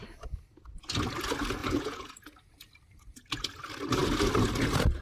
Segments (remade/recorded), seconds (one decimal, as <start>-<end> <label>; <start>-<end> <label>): 0.0-1.6 recorded; 1.6-2.1 remade; 2.1-5.0 recorded